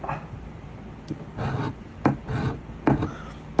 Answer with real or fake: real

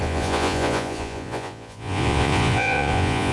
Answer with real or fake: fake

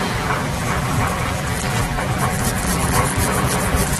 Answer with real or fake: fake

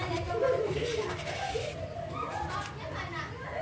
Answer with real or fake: real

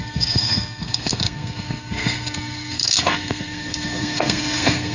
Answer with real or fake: fake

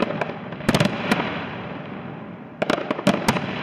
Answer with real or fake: real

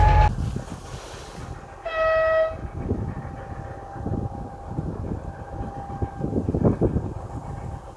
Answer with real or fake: real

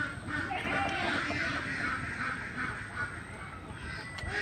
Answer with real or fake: real